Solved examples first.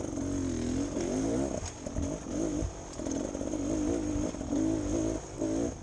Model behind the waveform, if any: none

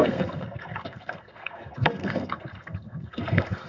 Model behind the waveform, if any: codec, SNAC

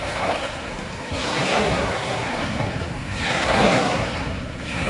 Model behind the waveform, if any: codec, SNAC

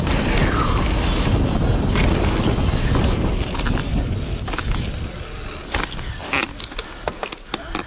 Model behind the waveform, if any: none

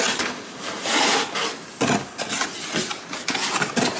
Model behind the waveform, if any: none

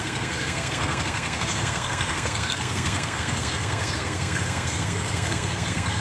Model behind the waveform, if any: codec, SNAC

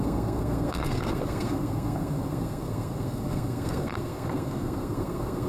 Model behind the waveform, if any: codec, SNAC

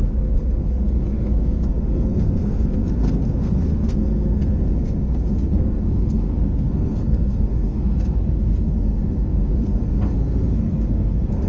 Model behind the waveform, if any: codec, SNAC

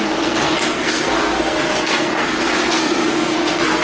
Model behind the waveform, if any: codec, SNAC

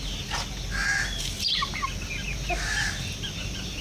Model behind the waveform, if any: none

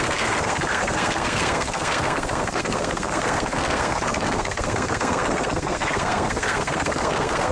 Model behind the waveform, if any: codec, SNAC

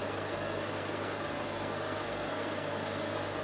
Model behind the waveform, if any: codec, SNAC